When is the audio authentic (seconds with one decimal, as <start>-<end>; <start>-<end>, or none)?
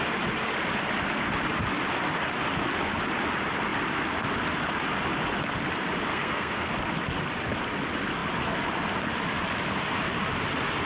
0.0-6.1; 6.7-10.9